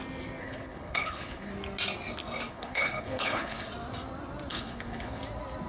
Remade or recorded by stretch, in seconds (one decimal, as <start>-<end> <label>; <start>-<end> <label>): 0.0-0.4 recorded; 0.4-1.5 remade; 1.5-2.5 recorded; 2.5-3.7 remade; 3.7-4.5 recorded; 4.5-5.2 remade; 5.2-5.7 recorded